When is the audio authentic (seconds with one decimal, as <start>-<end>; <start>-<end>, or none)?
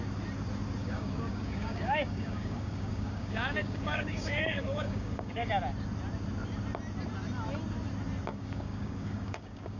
0.0-0.8; 5.5-8.3